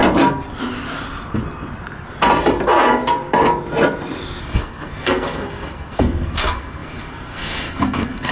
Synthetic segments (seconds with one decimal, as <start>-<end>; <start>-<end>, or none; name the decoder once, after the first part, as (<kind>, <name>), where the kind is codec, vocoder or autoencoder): 4.4-8.3 (codec, SNAC)